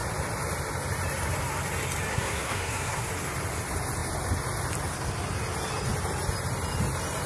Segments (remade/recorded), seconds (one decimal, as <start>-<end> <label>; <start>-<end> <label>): 0.0-2.1 recorded; 2.1-3.1 remade; 3.1-7.3 recorded